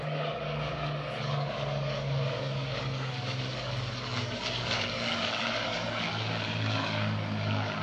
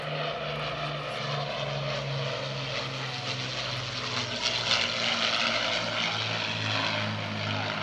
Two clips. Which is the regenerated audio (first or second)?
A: first